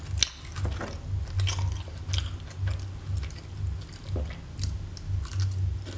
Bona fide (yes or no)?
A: yes